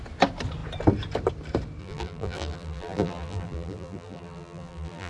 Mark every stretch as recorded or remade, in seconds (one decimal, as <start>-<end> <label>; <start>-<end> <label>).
0.0-1.8 recorded; 1.8-5.1 remade